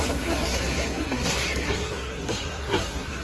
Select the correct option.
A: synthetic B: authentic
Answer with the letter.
A